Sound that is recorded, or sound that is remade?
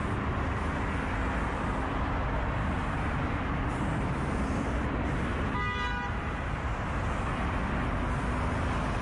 recorded